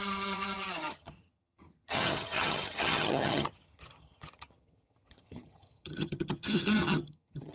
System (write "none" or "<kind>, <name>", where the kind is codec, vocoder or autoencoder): vocoder, HiFi-GAN